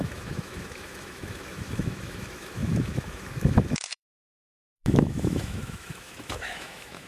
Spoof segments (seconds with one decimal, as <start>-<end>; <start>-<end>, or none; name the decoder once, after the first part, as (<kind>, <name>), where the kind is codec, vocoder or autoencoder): 0.0-7.1 (autoencoder, DAC-VAE)